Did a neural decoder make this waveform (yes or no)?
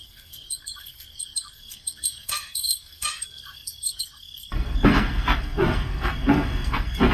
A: yes